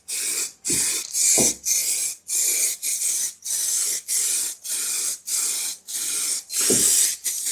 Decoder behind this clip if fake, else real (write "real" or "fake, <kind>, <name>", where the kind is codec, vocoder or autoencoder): real